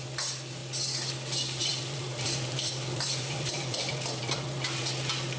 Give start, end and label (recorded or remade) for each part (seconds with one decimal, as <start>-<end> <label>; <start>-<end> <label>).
0.0-1.6 recorded; 1.6-4.8 remade; 4.8-5.4 recorded